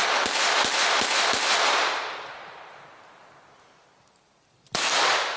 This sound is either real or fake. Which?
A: real